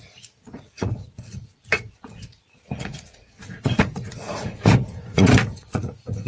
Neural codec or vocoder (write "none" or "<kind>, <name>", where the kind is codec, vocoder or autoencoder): vocoder, Vocos